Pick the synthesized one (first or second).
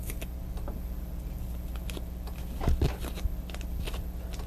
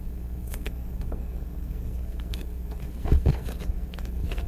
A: second